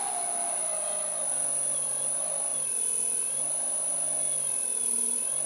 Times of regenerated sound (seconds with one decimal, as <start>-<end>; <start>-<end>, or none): none